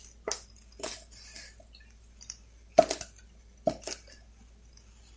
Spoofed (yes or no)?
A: no